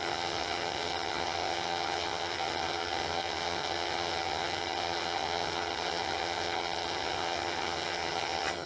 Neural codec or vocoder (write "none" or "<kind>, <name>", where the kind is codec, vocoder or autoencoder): vocoder, HiFi-GAN